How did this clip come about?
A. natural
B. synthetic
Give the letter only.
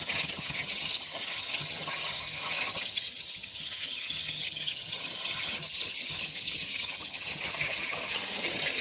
B